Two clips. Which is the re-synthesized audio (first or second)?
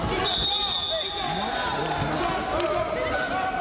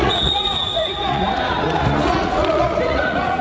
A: second